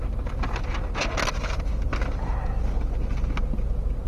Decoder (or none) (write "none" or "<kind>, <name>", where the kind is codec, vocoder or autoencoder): none